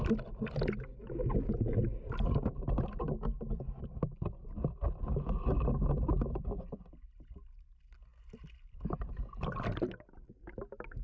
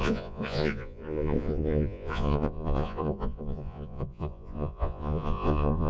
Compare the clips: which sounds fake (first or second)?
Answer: second